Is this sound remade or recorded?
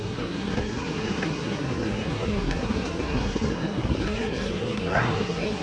remade